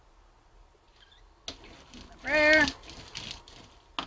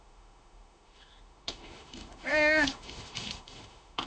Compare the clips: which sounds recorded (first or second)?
first